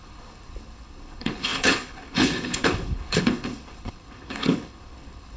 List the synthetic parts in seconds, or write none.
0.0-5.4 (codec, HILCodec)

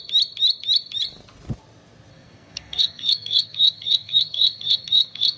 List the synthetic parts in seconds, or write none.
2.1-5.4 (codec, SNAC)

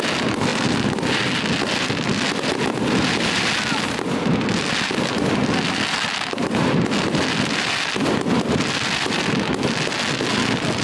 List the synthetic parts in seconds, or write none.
none

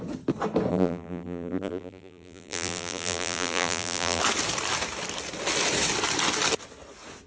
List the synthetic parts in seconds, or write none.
0.7-4.2 (vocoder, BigVGAN v2)

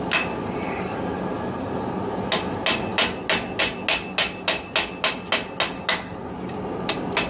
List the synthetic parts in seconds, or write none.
none

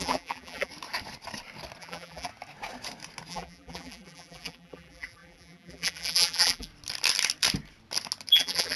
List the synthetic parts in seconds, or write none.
0.0-0.7 (vocoder, BigVGAN v2); 1.8-2.3; 3.3-6.7; 8.3-8.8

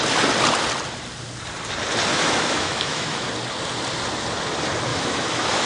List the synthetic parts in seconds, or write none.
2.1-3.3 (autoencoder, DAC-VAE); 4.9-5.7

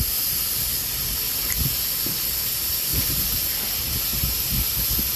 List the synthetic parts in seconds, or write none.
2.9-3.5 (vocoder, BigVGAN v2); 4.1-4.8